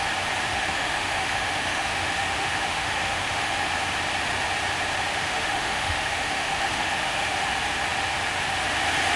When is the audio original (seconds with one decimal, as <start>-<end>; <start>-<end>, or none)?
0.0-0.5; 3.7-5.1; 7.5-9.2